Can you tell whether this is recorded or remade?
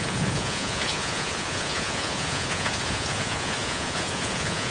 remade